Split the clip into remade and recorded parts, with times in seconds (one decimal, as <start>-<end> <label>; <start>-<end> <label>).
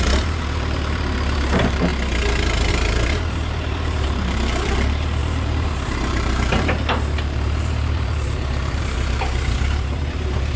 0.0-1.9 remade; 1.9-2.7 recorded; 2.7-10.6 remade